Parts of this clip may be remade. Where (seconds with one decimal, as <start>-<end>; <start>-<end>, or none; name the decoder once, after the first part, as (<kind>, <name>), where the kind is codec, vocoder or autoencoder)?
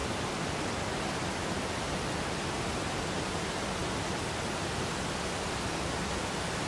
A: none